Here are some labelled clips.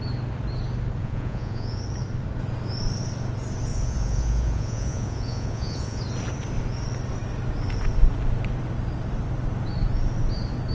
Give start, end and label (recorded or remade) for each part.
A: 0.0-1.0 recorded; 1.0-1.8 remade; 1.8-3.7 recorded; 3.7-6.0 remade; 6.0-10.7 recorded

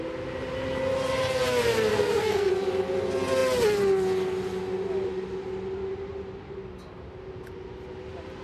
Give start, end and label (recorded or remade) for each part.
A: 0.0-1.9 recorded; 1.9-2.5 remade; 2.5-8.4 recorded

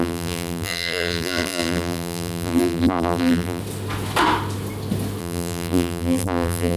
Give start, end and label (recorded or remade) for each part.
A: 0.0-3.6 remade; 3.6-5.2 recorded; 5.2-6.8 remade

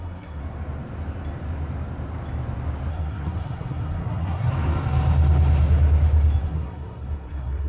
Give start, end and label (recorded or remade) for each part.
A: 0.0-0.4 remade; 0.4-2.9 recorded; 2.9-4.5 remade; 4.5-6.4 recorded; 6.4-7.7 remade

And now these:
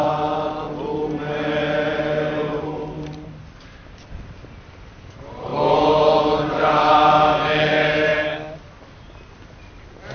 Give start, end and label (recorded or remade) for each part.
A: 0.0-10.1 recorded

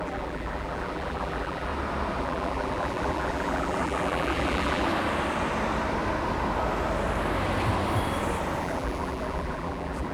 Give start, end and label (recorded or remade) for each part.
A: 0.0-1.7 remade; 1.7-2.2 recorded; 2.2-4.9 remade; 4.9-8.6 recorded; 8.6-10.1 remade